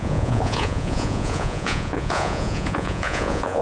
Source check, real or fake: fake